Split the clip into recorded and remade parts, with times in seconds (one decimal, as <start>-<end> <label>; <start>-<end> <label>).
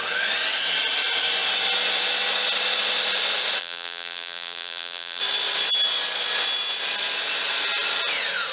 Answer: 0.0-3.6 recorded; 3.6-5.2 remade; 5.2-8.5 recorded